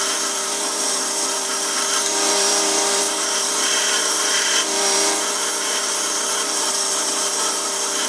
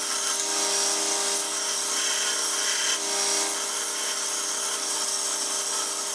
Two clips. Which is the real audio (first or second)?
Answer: second